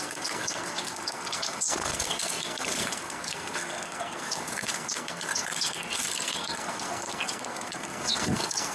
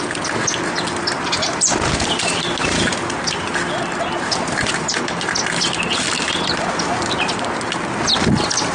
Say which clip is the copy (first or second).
first